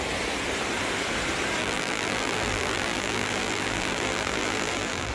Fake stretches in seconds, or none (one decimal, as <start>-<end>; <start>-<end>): 1.6-5.1